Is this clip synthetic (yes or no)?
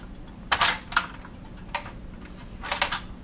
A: no